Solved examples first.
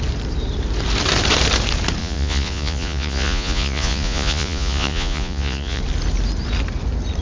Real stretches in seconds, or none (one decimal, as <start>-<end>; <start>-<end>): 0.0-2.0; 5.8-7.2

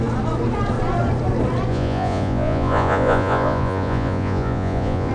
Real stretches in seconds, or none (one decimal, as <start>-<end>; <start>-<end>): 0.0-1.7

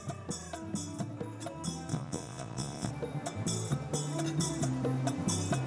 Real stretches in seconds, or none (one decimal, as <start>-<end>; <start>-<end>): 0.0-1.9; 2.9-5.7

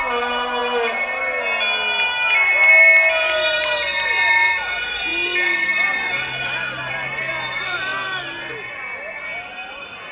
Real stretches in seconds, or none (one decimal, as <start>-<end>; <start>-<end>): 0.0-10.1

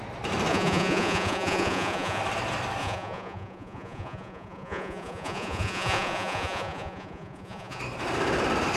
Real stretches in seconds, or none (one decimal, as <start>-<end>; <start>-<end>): 0.0-0.5; 2.2-2.8; 7.8-8.8